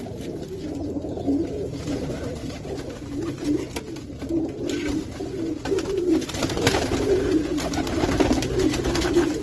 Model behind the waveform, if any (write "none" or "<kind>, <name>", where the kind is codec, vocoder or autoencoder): none